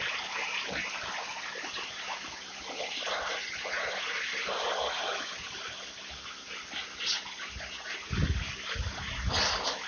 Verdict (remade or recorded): recorded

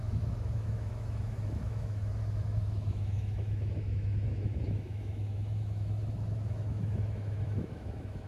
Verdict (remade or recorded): remade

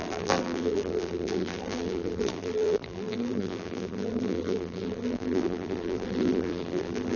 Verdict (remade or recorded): remade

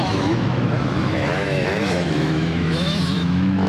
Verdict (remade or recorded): remade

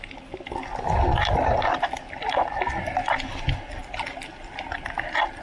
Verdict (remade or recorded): recorded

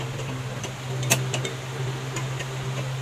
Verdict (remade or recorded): recorded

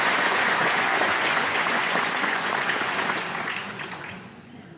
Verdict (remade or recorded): remade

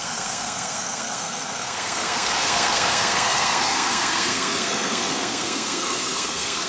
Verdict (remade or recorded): remade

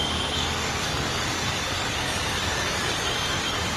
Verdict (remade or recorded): remade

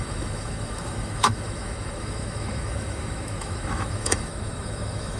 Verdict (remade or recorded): remade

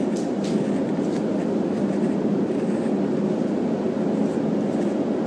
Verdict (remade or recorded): recorded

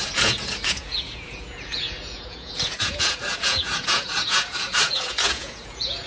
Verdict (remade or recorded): remade